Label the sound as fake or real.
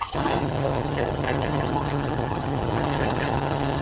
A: fake